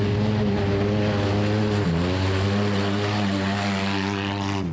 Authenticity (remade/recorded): recorded